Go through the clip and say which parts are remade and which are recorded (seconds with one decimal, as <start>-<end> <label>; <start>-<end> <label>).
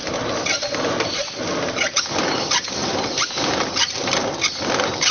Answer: 0.0-5.1 recorded